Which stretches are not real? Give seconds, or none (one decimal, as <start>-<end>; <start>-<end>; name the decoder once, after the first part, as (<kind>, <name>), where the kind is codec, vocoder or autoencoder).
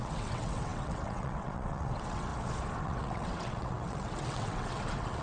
0.0-2.3 (vocoder, WaveNeXt); 2.8-5.2